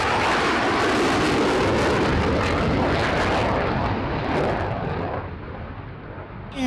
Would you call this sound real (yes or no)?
yes